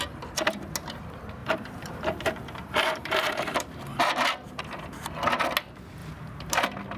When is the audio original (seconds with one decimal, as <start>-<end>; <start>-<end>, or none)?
0.0-1.4; 4.6-6.0; 6.6-7.0

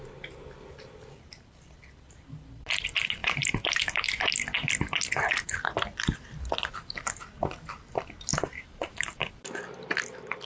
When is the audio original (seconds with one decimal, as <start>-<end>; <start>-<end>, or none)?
0.0-3.2; 4.3-8.3; 9.3-10.5